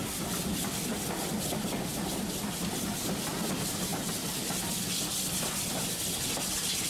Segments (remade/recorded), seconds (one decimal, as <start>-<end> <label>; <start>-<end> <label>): 0.0-6.9 recorded